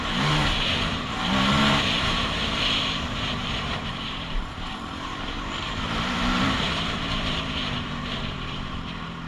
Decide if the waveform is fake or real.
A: fake